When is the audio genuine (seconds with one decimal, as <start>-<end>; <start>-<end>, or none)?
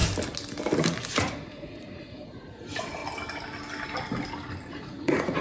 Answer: 0.0-1.1; 3.0-4.7